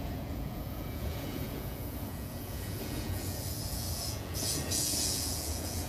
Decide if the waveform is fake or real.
fake